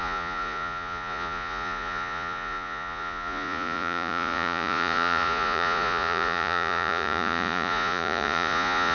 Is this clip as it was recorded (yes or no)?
no